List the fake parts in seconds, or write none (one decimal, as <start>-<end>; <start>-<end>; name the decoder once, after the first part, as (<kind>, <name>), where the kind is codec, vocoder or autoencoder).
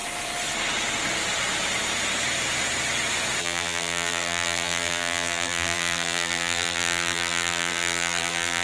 3.4-8.6 (vocoder, BigVGAN v2)